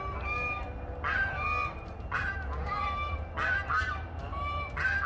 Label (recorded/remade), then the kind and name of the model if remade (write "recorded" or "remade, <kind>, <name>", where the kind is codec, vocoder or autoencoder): recorded